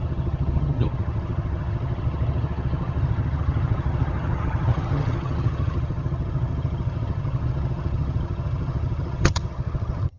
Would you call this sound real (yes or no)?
no